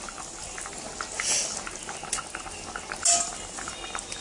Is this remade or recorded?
recorded